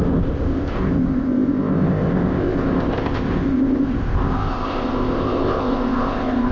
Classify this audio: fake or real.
fake